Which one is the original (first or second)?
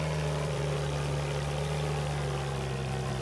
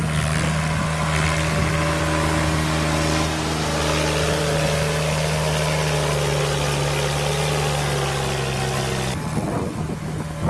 second